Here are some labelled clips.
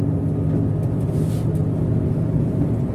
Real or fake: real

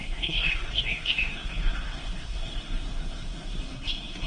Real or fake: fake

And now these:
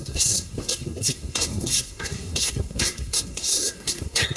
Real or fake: fake